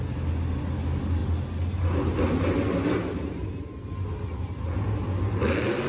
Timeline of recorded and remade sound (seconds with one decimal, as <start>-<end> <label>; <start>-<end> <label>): 0.0-5.9 recorded